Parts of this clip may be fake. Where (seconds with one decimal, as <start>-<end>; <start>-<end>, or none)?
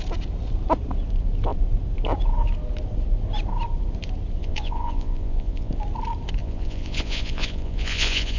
4.4-5.7; 6.4-8.4